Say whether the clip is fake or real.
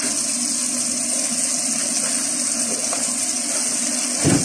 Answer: real